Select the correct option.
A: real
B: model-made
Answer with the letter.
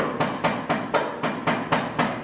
A